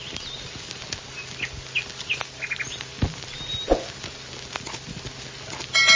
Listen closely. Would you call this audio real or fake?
real